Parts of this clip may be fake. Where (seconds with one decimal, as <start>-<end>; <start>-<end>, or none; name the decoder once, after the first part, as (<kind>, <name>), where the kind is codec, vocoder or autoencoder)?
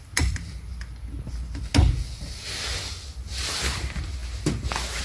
none